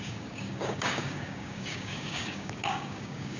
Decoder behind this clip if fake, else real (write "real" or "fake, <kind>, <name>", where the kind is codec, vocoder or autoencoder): fake, codec, DAC